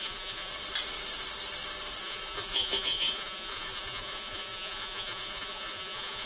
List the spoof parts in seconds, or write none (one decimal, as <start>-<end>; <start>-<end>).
0.0-0.5; 2.0-6.3